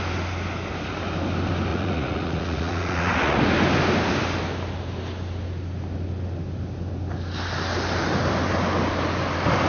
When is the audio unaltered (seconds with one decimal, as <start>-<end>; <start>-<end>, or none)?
0.0-1.7; 3.4-9.7

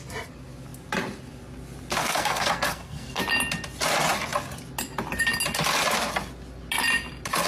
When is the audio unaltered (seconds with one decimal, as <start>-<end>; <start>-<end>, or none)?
0.0-2.0; 3.2-7.5

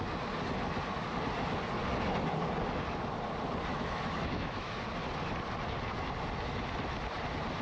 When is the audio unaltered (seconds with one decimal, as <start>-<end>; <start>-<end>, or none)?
0.0-3.7; 4.7-7.6

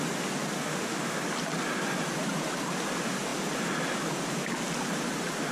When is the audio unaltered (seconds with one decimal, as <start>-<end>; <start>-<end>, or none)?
0.0-0.6; 1.2-5.5

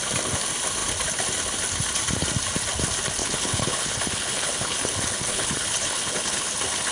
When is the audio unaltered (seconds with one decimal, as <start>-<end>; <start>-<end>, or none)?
0.0-3.2; 6.5-6.9

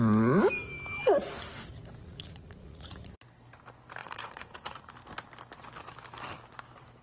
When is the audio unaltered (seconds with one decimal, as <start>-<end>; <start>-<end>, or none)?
0.0-2.0; 3.2-4.0; 4.9-7.0